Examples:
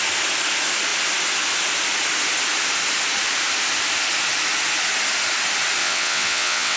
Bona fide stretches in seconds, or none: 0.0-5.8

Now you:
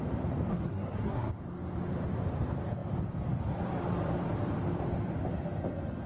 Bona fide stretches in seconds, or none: 0.0-0.5; 1.3-6.1

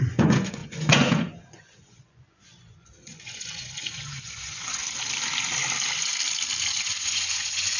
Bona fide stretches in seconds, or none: 4.8-6.7

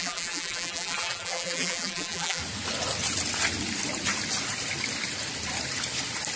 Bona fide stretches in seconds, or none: 2.4-6.4

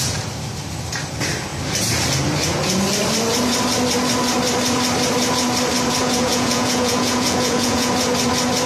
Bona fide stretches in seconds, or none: 0.0-6.0; 7.9-8.7